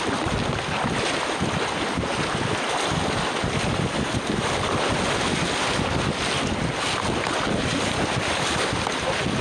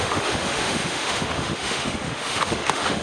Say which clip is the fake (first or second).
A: second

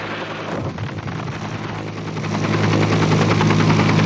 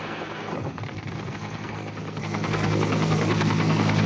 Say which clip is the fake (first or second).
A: second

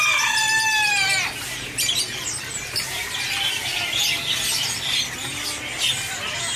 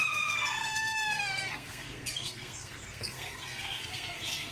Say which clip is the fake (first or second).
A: second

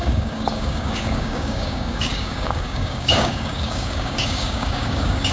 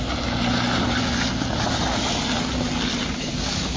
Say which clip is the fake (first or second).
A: first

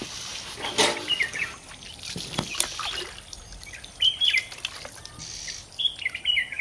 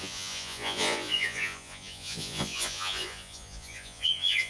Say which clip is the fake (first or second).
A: second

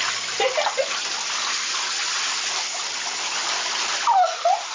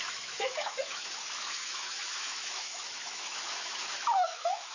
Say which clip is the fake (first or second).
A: second